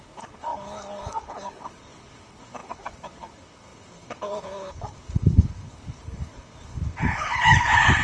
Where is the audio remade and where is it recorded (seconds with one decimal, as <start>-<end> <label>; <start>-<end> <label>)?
0.0-8.0 remade